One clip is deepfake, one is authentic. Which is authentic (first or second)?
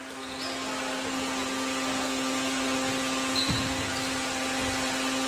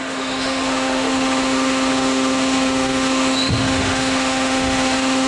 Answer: first